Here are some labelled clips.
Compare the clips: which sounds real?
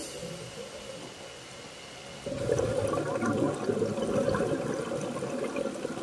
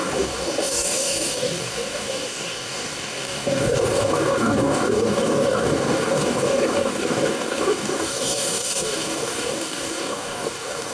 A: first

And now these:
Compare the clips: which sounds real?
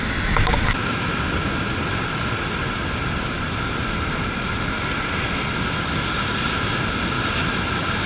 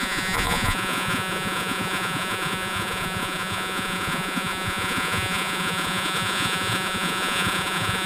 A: first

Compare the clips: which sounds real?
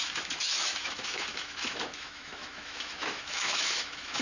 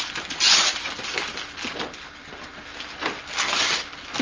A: second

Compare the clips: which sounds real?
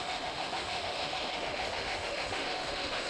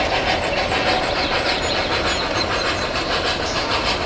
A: second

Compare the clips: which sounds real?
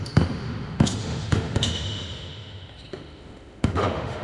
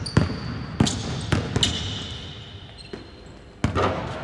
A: second